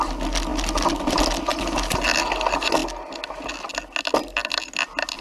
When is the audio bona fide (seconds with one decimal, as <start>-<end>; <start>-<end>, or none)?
0.0-5.2